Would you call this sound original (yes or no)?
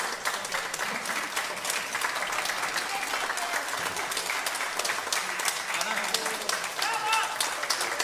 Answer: yes